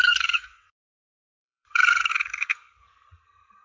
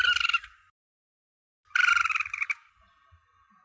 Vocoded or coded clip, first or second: first